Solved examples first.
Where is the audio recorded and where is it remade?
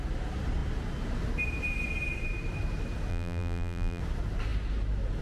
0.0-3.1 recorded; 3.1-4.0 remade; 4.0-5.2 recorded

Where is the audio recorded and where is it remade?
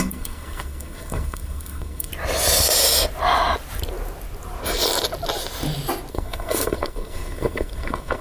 0.0-2.1 remade; 2.1-6.1 recorded; 6.1-8.2 remade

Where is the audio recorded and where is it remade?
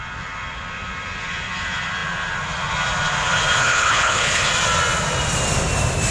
0.0-3.6 recorded; 3.6-4.5 remade; 4.5-6.1 recorded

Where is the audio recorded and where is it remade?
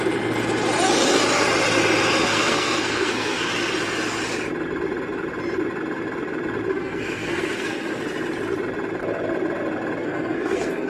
0.0-2.2 recorded; 2.2-3.5 remade; 3.5-6.7 recorded; 6.7-8.0 remade; 8.0-10.0 recorded; 10.0-10.9 remade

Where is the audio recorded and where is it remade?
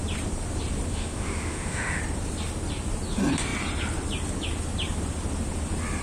0.0-0.9 recorded; 0.9-2.0 remade; 2.0-6.0 recorded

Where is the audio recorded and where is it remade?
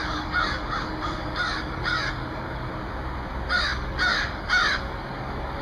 0.0-2.7 remade; 2.7-3.5 recorded; 3.5-5.6 remade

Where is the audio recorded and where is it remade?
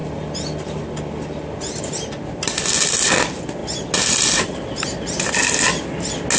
0.0-6.4 recorded